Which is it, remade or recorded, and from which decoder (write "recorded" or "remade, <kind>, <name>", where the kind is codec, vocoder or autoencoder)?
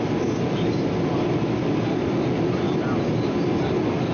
recorded